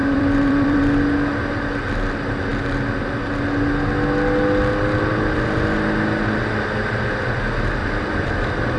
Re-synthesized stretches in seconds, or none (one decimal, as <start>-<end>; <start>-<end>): 0.0-0.8; 7.8-8.3